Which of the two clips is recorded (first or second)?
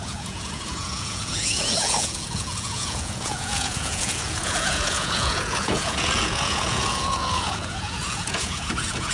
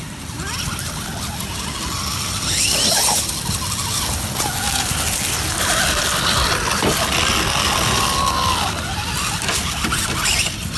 second